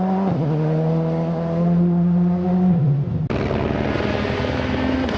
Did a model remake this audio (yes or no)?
no